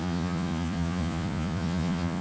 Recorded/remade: remade